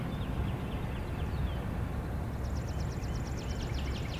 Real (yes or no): yes